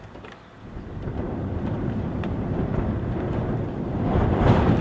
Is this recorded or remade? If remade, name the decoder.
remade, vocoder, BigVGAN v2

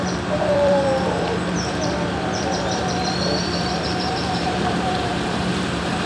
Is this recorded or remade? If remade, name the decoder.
remade, vocoder, BigVGAN v2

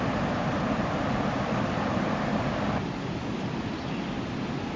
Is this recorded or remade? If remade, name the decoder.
recorded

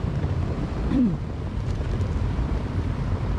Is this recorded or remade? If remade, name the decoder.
remade, vocoder, BigVGAN v2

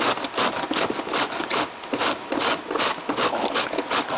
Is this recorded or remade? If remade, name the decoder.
recorded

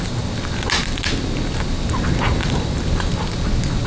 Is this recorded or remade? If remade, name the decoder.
recorded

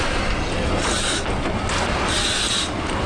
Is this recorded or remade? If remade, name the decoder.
recorded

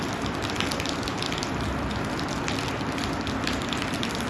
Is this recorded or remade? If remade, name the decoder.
recorded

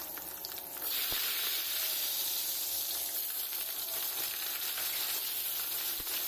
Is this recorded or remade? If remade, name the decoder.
remade, vocoder, BigVGAN v2